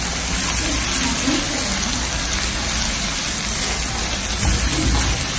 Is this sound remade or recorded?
recorded